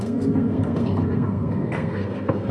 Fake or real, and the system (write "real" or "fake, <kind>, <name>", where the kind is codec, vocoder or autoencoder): fake, codec, SNAC